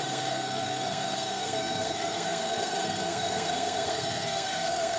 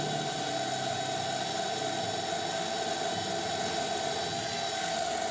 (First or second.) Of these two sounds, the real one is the second